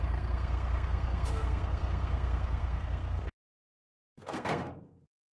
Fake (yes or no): yes